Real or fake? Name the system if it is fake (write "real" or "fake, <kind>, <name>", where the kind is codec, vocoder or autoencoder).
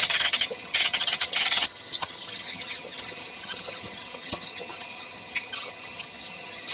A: fake, vocoder, HiFi-GAN